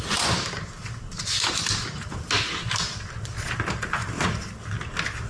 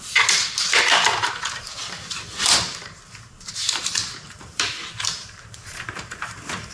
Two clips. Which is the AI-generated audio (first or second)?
second